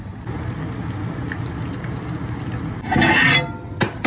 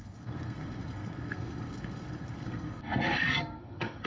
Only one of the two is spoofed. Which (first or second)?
second